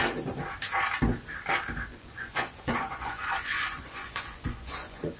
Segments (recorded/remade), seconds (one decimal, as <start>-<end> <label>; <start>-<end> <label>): 0.0-1.9 recorded; 1.9-5.2 remade